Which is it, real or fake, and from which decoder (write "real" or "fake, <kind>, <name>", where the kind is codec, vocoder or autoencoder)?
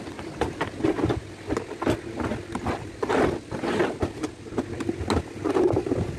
real